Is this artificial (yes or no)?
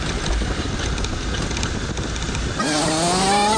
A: no